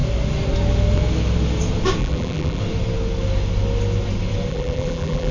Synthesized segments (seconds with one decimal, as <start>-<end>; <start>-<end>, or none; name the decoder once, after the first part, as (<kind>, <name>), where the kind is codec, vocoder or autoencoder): 2.0-2.6 (vocoder, BigVGAN v2); 4.5-5.3